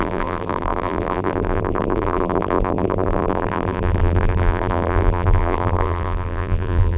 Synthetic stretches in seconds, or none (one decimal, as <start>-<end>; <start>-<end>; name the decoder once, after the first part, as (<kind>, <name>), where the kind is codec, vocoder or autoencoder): 0.0-7.0 (vocoder, BigVGAN v2)